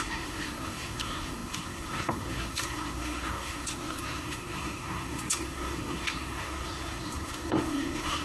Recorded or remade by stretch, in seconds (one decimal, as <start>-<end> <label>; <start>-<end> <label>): 0.0-8.2 remade